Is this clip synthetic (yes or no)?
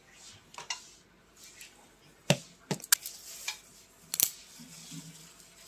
no